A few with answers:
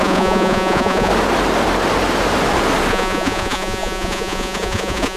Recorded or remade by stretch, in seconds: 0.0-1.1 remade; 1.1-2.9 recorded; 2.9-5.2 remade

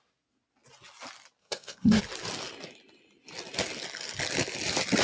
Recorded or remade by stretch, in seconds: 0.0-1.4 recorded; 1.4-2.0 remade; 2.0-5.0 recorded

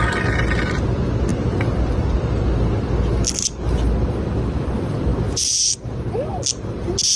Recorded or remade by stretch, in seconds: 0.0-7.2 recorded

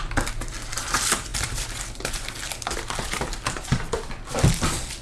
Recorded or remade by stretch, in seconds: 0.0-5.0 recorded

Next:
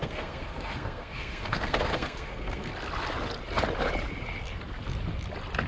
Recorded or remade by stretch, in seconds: 0.0-2.7 remade; 2.7-5.7 recorded

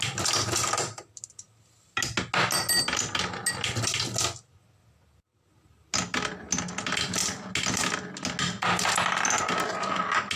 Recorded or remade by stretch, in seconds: 0.0-10.4 recorded

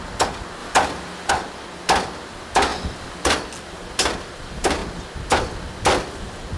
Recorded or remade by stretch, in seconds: 0.0-0.6 recorded; 0.6-1.3 remade; 1.3-6.6 recorded